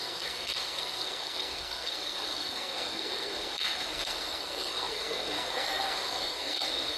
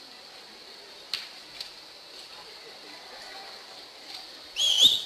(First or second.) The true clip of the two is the second